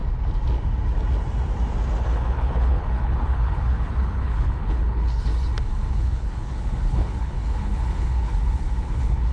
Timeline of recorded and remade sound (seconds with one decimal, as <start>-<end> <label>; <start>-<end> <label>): 0.0-2.0 recorded; 2.0-5.3 remade; 5.3-5.9 recorded; 5.9-9.3 remade